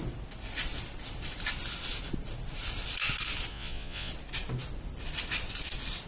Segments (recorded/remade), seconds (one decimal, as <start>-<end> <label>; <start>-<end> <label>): 0.0-3.5 recorded; 3.5-4.1 remade; 4.1-6.1 recorded